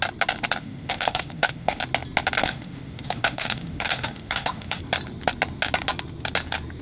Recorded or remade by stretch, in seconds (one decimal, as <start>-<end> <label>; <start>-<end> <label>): 0.0-0.6 recorded; 0.6-1.8 remade; 1.8-2.4 recorded; 2.4-4.8 remade; 4.8-6.8 recorded